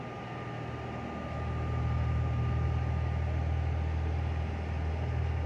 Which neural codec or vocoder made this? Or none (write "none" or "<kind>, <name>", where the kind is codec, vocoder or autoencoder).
none